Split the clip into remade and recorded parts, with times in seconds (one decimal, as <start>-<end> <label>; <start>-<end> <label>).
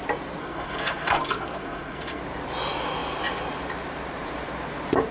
0.0-0.4 recorded; 0.4-2.2 remade; 2.2-5.1 recorded